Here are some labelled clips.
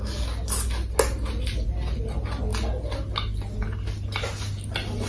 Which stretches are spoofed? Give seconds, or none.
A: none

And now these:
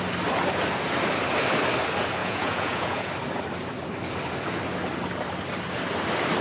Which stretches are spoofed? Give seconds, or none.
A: 2.2-3.1 (vocoder, Vocos)